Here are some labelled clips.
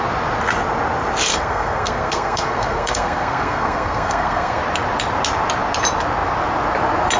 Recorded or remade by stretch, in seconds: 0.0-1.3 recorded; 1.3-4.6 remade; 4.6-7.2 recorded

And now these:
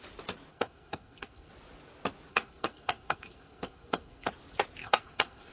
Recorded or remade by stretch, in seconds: 0.0-0.5 recorded; 0.5-1.5 remade; 1.5-2.3 recorded; 2.3-4.3 remade; 4.3-4.8 recorded; 4.8-5.5 remade

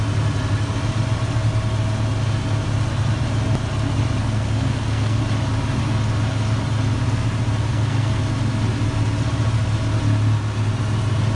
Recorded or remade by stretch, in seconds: 0.0-4.2 recorded; 4.2-5.2 remade; 5.2-7.7 recorded; 7.7-8.2 remade; 8.2-11.3 recorded

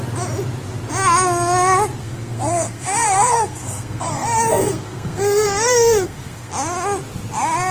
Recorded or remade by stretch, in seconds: 0.0-2.0 recorded; 2.0-6.5 remade; 6.5-7.7 recorded

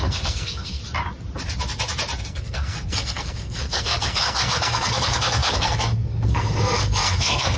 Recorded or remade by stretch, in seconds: 0.0-0.8 remade; 0.8-2.2 recorded; 2.2-7.6 remade